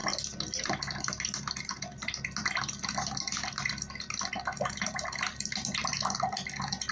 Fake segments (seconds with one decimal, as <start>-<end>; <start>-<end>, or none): none